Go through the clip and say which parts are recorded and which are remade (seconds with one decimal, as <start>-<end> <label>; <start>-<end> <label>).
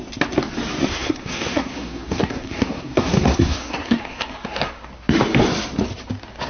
0.0-0.9 recorded; 0.9-4.8 remade; 4.8-6.5 recorded